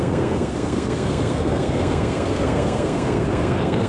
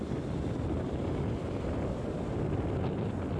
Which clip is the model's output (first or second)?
first